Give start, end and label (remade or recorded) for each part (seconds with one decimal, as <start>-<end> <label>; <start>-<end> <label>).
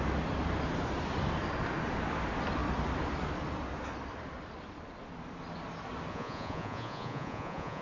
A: 0.0-6.1 recorded; 6.1-7.8 remade